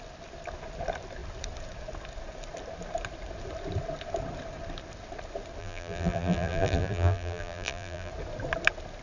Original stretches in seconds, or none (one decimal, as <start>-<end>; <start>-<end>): 0.0-5.6; 8.1-9.0